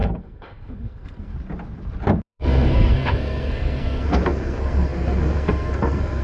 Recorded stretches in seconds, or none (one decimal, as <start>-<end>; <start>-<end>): 1.3-2.2